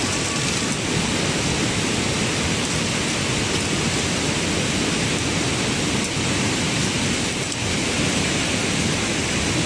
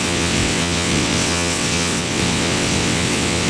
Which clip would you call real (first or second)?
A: first